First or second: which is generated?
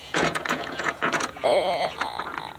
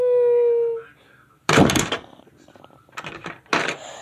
first